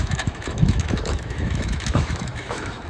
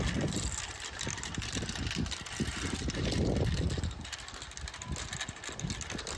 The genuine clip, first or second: second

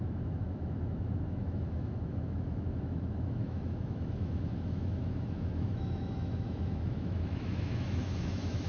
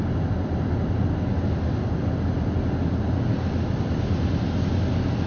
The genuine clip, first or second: second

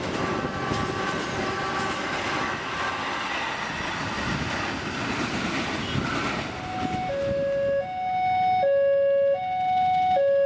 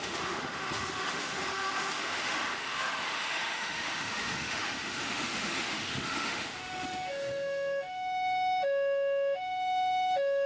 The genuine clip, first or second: first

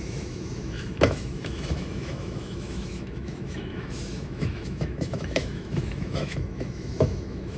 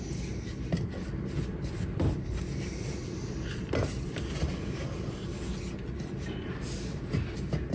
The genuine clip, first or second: second